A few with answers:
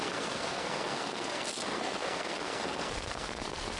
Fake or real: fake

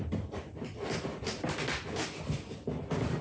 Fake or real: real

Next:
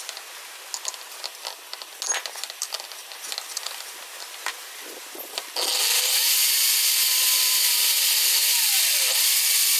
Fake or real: real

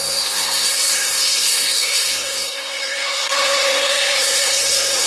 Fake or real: fake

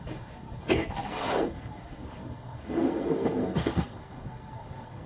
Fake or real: fake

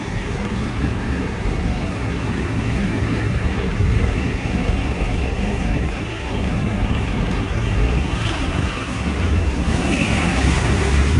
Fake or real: fake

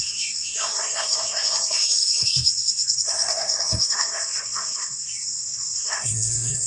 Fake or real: fake